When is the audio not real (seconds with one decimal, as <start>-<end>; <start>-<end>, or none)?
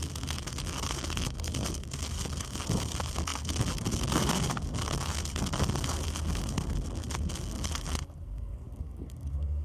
0.0-9.6